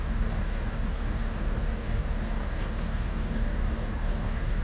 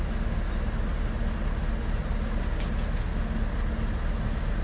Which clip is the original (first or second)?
second